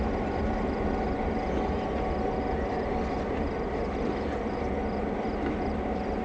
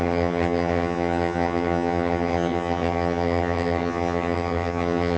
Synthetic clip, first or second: second